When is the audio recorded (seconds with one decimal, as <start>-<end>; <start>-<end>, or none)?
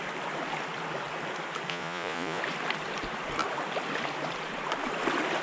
0.0-1.7; 2.4-5.4